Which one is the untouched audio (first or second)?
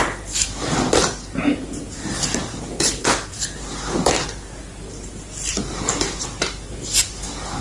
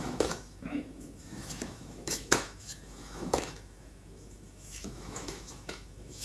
first